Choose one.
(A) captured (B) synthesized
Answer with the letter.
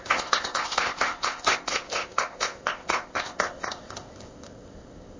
B